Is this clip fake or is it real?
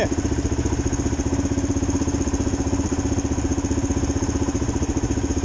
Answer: real